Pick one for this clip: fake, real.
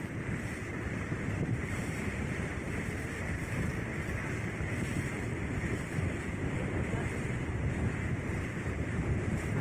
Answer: fake